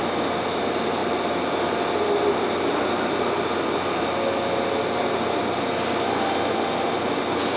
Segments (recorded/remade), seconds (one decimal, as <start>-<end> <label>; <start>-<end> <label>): 0.0-7.6 recorded